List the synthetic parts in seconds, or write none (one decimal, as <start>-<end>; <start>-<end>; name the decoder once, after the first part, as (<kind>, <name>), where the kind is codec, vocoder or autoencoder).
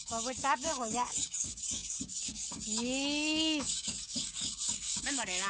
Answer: 0.0-5.5 (codec, DAC)